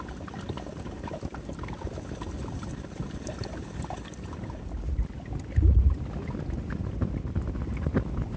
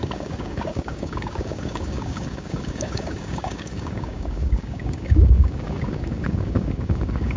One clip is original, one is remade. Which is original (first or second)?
first